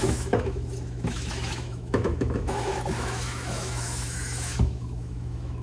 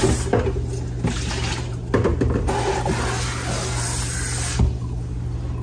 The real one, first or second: second